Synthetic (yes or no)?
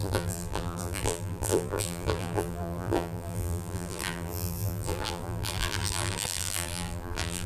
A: yes